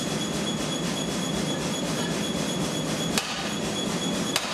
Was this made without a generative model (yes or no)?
yes